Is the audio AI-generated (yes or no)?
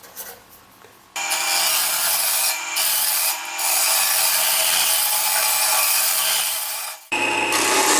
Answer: no